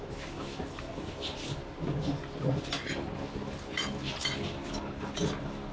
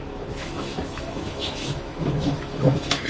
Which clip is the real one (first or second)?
first